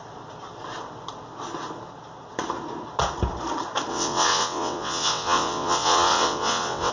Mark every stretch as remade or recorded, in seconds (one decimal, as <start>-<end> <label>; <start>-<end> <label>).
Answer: 0.0-3.9 recorded; 3.9-6.9 remade